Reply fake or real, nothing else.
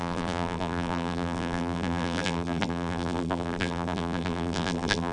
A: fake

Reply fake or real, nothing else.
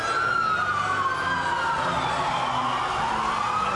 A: real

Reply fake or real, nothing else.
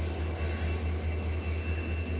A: real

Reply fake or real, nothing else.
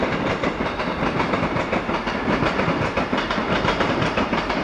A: fake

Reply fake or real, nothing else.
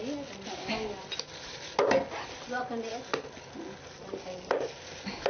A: real